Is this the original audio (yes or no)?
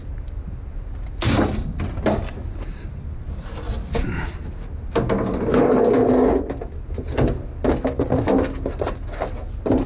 yes